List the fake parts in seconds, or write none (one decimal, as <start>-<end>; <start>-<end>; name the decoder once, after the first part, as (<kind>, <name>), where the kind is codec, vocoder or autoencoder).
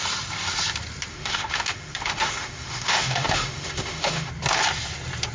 1.1-4.3 (autoencoder, DAC-VAE)